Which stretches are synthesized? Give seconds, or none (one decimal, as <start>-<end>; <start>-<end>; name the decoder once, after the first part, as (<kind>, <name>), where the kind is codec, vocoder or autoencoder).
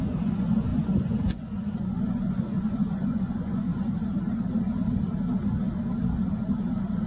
0.0-3.7 (vocoder, Vocos)